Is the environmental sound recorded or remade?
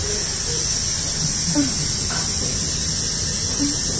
recorded